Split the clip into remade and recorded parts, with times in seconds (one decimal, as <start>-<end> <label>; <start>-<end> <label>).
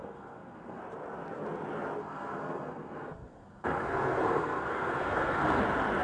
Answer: 0.0-0.8 remade; 0.8-2.0 recorded; 2.0-5.6 remade; 5.6-6.0 recorded